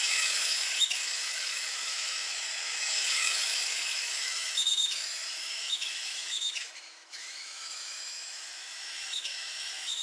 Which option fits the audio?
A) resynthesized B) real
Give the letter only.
A